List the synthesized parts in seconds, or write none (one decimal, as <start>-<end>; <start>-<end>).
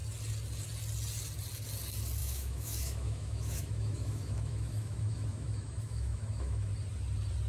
2.2-6.7